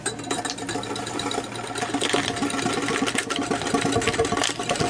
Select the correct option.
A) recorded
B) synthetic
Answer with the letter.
A